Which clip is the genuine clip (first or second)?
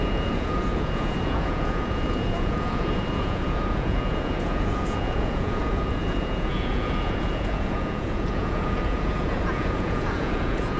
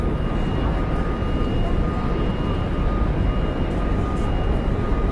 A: second